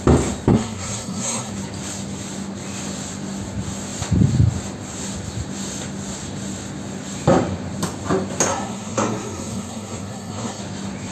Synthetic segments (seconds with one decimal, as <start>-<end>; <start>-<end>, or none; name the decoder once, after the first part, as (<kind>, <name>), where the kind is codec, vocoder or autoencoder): 0.5-1.5 (codec, SNAC); 8.5-10.6